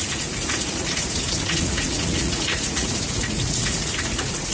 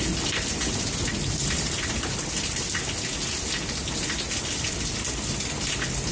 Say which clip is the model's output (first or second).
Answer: first